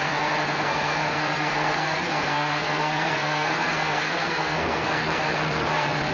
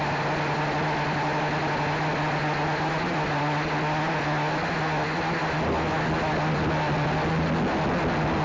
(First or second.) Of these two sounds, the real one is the second